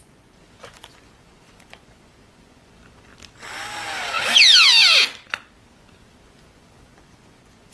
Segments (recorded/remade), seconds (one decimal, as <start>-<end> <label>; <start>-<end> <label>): 0.0-3.1 remade; 3.1-5.7 recorded; 5.7-7.7 remade